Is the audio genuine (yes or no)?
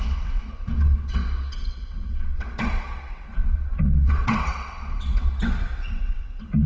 no